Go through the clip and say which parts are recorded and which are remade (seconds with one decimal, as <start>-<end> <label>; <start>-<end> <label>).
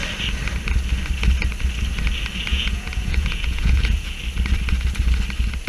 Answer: 0.0-2.5 recorded; 2.5-4.2 remade; 4.2-5.7 recorded